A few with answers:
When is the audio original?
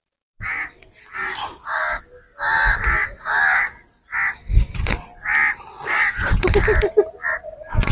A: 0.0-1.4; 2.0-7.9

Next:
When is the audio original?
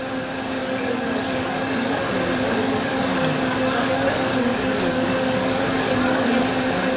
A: 0.0-0.6; 2.1-2.6; 6.4-7.0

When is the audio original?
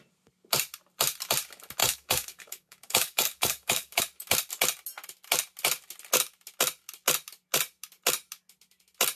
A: 0.0-1.8; 4.0-9.2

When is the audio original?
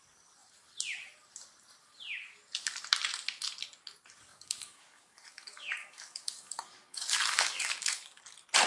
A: 0.0-4.3; 8.2-8.7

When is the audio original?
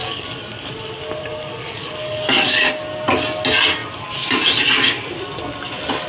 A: 0.7-1.2; 2.7-6.1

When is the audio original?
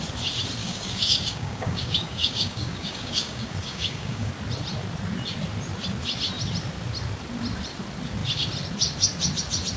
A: 0.0-0.6; 4.3-9.8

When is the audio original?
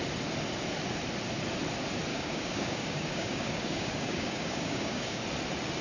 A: 0.0-2.1; 5.2-5.8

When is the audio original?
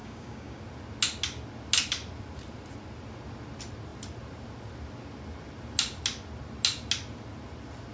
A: 0.6-7.9